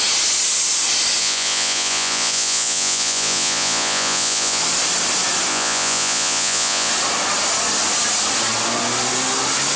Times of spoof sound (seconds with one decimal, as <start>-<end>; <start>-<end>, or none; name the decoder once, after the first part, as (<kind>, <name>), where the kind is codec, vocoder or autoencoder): 1.2-4.6 (vocoder, Vocos); 5.5-6.9